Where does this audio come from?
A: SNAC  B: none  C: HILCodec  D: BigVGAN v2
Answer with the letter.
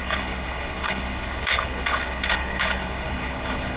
C